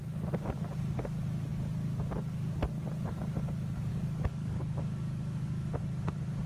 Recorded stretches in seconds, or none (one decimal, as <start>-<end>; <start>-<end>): 0.0-3.9; 5.8-6.5